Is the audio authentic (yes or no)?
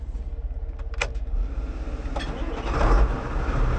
yes